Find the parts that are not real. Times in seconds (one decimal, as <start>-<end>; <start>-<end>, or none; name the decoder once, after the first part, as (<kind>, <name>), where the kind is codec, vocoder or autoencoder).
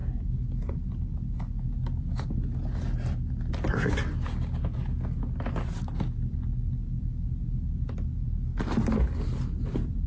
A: none